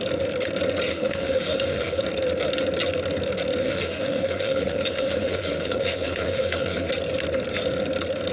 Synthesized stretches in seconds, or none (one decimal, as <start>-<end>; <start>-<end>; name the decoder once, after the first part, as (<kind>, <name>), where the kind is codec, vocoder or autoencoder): 0.9-2.0 (autoencoder, DAC-VAE); 3.6-6.9